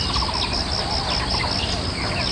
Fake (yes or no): no